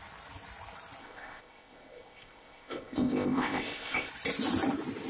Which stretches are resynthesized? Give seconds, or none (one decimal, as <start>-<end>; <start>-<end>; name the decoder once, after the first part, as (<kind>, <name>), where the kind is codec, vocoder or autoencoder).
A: 1.0-4.1 (codec, ZipCodec)